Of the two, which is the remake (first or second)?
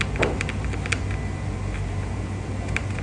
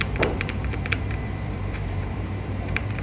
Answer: second